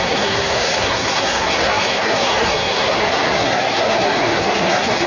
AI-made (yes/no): yes